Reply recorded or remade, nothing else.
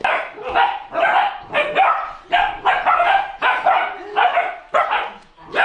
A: recorded